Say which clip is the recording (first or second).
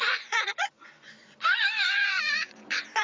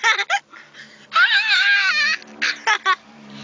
second